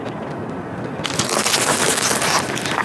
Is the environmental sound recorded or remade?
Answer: recorded